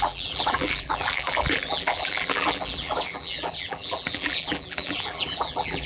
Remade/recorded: remade